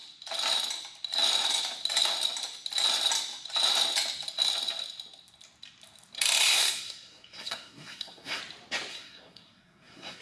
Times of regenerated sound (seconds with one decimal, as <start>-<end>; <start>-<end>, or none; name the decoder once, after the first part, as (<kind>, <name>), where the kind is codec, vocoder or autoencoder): 6.4-8.4 (codec, SNAC); 8.9-10.2